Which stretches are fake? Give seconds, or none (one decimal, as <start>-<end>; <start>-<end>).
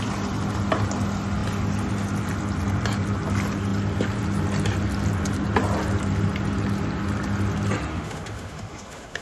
7.9-9.2